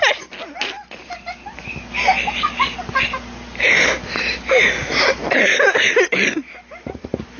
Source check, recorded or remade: recorded